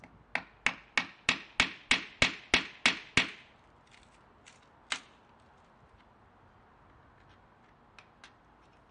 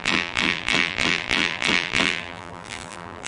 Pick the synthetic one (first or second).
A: second